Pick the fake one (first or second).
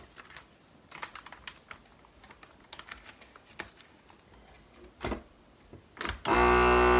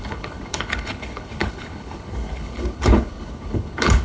second